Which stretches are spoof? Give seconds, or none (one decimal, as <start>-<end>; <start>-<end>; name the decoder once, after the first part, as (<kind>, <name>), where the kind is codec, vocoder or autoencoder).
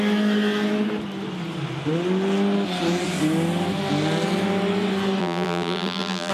5.2-6.3 (vocoder, BigVGAN v2)